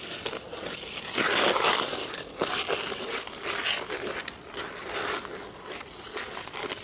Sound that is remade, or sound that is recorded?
recorded